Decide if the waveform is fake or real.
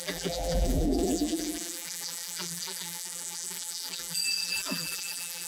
fake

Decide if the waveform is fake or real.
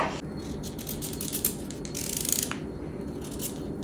real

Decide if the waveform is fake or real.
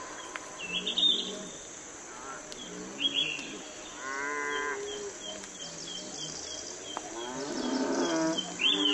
real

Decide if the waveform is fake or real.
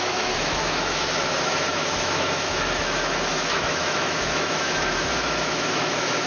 fake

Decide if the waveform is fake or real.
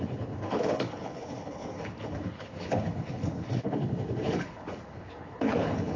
fake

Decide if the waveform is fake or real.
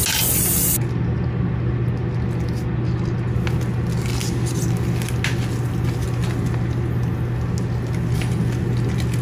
real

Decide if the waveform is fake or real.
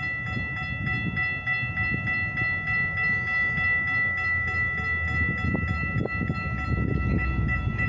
real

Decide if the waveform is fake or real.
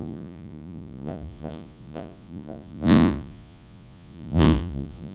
fake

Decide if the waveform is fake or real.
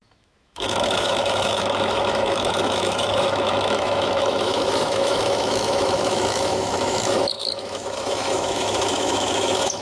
fake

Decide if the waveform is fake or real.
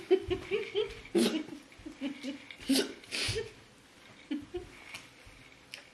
real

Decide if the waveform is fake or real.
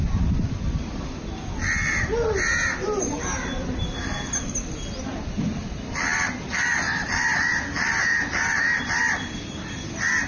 real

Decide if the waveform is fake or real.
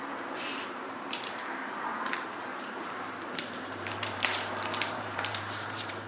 fake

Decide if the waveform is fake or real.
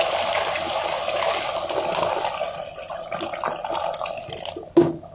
real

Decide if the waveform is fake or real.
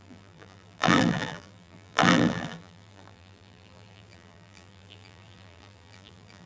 fake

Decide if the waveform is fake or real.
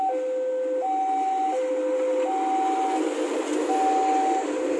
real